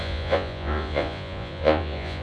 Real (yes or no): no